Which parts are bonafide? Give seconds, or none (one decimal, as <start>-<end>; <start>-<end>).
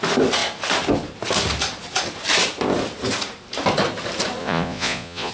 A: 0.0-4.4